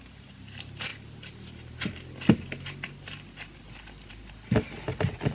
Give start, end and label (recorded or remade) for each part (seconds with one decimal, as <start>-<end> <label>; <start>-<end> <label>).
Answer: 0.0-5.3 recorded